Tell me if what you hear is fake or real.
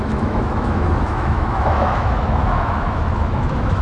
fake